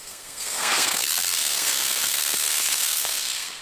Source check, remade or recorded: remade